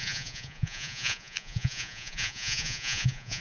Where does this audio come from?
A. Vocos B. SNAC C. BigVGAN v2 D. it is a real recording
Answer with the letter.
A